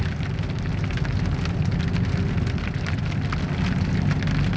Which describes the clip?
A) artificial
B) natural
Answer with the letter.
B